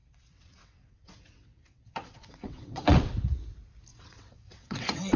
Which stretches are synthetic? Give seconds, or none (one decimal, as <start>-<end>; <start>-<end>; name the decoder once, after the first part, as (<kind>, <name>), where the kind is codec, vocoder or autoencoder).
0.0-3.1 (vocoder, WaveNeXt); 3.9-5.2